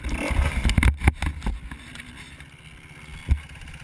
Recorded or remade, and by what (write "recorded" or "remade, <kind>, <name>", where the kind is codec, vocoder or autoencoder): recorded